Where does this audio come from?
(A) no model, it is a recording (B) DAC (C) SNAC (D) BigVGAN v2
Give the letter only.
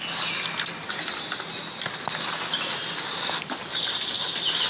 A